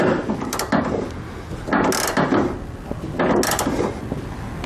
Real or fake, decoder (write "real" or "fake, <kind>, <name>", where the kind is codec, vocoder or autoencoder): real